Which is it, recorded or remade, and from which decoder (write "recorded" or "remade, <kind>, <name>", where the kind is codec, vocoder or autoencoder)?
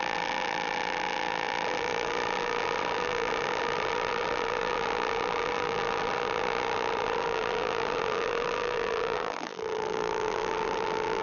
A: remade, vocoder, BigVGAN v2